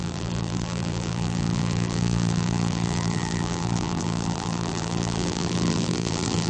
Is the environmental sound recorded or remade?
remade